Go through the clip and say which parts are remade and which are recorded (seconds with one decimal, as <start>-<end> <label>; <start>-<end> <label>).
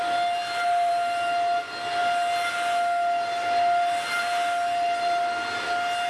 0.0-6.1 recorded